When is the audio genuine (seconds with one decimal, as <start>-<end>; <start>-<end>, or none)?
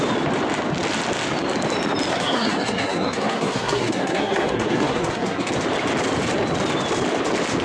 0.0-2.1; 5.5-7.6